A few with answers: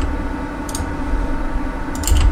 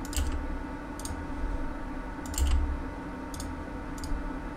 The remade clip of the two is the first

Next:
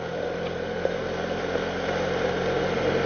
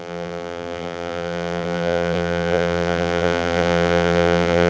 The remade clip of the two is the second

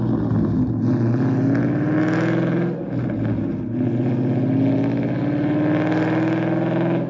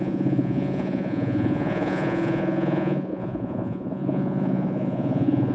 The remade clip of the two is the second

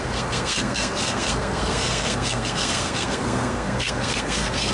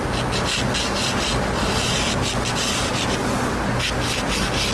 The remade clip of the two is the first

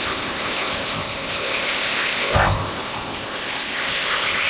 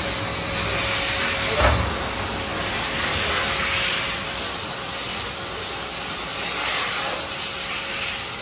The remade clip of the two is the first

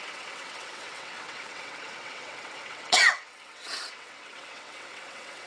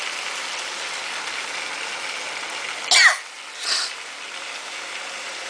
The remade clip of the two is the first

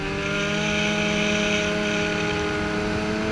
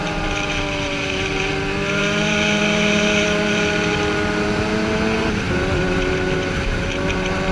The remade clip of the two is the second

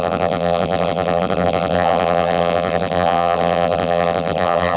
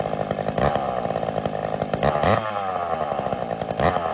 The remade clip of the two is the first